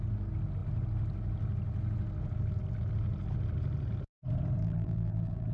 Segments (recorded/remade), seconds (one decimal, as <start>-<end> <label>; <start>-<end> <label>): 0.0-4.6 recorded; 4.6-5.5 remade